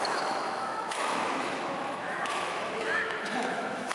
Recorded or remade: remade